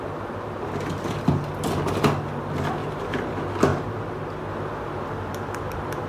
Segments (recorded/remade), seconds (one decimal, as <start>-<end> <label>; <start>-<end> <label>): 0.0-2.8 recorded; 2.8-3.3 remade; 3.3-6.1 recorded

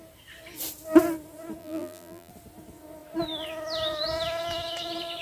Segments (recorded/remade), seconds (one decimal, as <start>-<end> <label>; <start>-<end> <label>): 0.0-1.6 recorded; 1.6-2.3 remade; 2.3-5.2 recorded

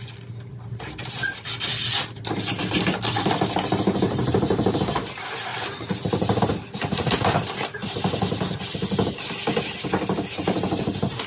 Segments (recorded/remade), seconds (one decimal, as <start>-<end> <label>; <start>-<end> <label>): 0.0-0.5 recorded; 0.5-4.3 remade; 4.3-5.5 recorded; 5.5-6.4 remade; 6.4-7.8 recorded; 7.8-8.4 remade; 8.4-11.3 recorded

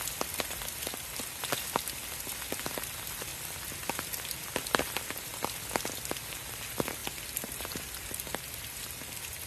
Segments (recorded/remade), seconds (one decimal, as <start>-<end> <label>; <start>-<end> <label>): 0.0-9.5 recorded